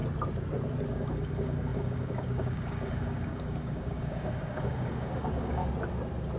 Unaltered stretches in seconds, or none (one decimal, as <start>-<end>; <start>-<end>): 0.0-0.9; 5.6-6.4